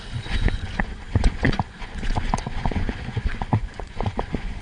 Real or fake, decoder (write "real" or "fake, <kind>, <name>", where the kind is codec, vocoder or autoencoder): fake, vocoder, Vocos